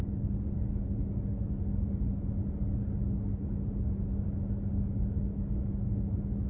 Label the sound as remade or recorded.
recorded